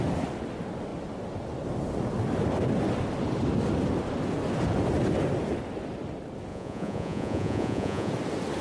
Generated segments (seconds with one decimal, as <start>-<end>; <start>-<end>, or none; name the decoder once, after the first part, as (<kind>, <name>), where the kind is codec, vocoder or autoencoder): 6.5-8.1 (vocoder, Vocos)